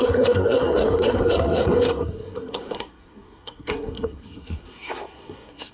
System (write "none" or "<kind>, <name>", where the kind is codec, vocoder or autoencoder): codec, SNAC